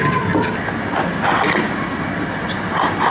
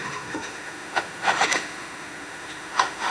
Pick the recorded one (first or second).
first